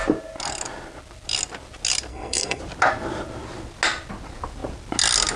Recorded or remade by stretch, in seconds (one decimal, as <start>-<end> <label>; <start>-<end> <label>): 0.0-2.1 recorded; 2.1-2.6 remade; 2.6-5.4 recorded